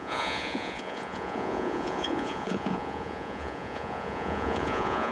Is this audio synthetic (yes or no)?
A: yes